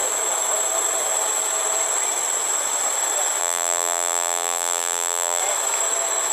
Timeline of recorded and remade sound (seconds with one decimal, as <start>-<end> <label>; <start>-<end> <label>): 0.0-3.4 recorded; 3.4-5.4 remade; 5.4-6.3 recorded